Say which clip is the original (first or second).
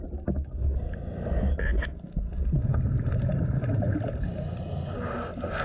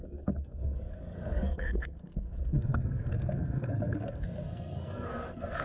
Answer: first